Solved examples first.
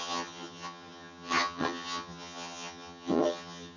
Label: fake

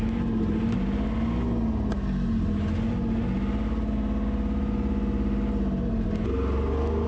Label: real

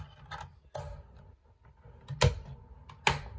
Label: real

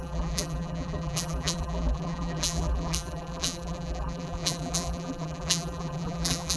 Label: fake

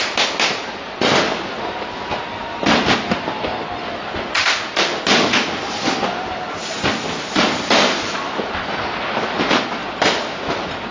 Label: real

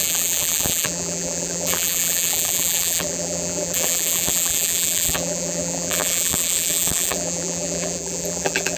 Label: fake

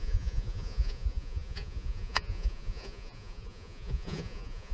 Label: fake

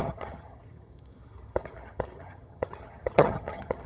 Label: fake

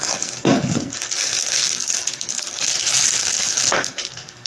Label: fake